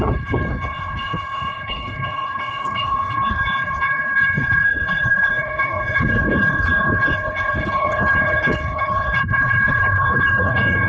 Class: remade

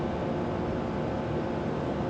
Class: recorded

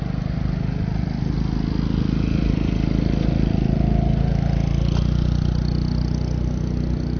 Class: recorded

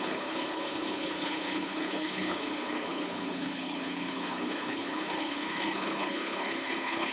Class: remade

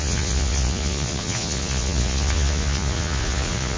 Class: remade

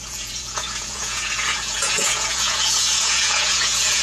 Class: remade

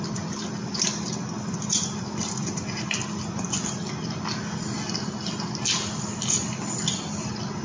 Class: recorded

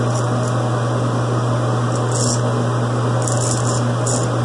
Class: recorded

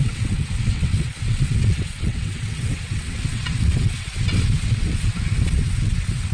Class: remade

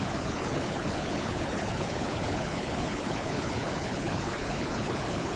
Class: remade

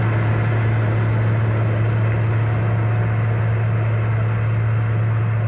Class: recorded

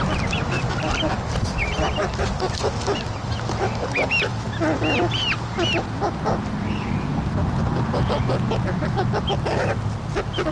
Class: recorded